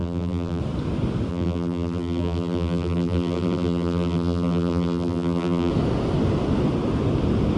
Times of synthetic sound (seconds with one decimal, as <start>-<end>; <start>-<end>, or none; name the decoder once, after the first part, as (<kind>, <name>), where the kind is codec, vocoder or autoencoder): 0.0-0.6 (vocoder, BigVGAN v2); 1.3-5.7